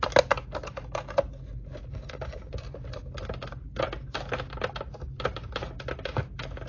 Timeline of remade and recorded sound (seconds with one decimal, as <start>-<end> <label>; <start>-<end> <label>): 0.0-1.9 recorded; 1.9-2.5 remade; 2.5-6.7 recorded